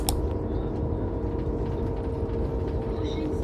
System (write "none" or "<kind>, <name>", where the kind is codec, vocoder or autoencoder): none